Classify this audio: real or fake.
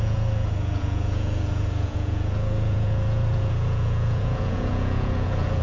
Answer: fake